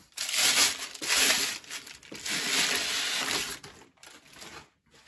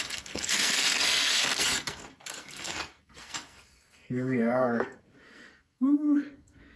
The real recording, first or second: first